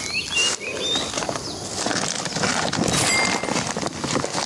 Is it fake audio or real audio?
real